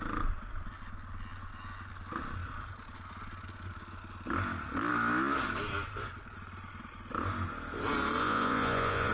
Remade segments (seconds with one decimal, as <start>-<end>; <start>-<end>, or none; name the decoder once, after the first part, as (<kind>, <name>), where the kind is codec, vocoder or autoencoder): 8.2-9.1 (vocoder, Vocos)